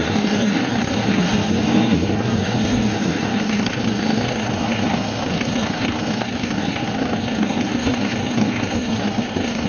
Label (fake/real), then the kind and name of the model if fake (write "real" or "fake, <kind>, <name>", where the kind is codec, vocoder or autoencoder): fake, codec, SNAC